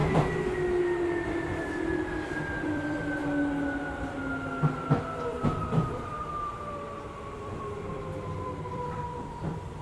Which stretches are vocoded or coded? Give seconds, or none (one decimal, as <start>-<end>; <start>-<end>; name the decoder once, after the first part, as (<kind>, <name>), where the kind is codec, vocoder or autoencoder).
1.3-3.2 (vocoder, BigVGAN v2); 5.6-9.8